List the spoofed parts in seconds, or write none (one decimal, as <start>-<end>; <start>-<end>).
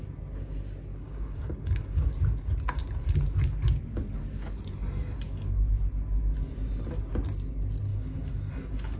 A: 0.9-2.1; 7.9-8.5